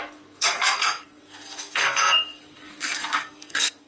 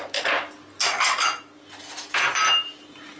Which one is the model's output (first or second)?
first